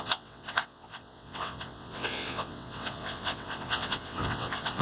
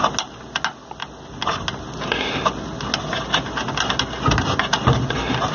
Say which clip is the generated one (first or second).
first